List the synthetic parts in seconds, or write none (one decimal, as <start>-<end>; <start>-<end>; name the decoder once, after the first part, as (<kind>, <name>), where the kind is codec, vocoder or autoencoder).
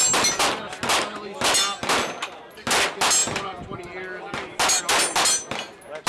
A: none